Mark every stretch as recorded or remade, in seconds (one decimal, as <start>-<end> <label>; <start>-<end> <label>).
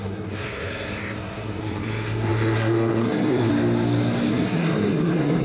0.0-3.5 remade; 3.5-4.3 recorded; 4.3-5.4 remade